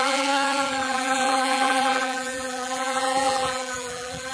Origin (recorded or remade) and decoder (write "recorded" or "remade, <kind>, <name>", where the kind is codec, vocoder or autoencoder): remade, vocoder, BigVGAN v2